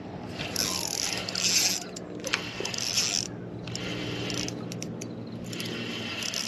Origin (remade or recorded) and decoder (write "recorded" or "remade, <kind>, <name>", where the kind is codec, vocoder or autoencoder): recorded